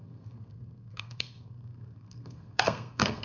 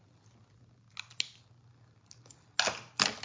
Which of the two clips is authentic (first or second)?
second